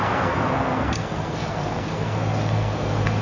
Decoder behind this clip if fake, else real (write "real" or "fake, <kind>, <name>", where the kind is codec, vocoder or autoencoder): fake, codec, SNAC